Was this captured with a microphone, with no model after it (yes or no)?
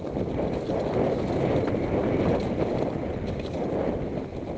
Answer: yes